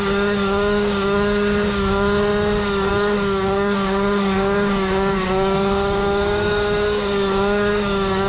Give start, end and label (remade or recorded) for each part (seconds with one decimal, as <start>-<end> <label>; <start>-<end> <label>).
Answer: 0.0-2.3 remade; 2.3-2.9 recorded; 2.9-8.3 remade